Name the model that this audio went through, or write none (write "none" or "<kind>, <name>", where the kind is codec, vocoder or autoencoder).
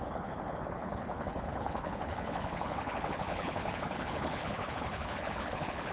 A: codec, HILCodec